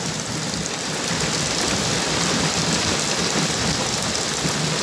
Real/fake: real